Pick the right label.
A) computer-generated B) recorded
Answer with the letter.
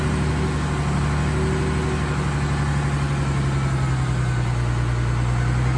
B